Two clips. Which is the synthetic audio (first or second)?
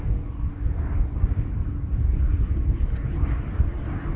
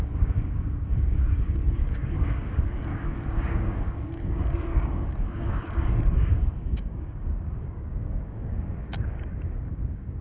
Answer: second